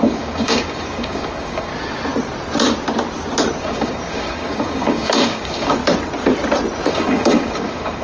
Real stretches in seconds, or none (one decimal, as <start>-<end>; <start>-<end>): 1.7-3.6; 5.8-6.9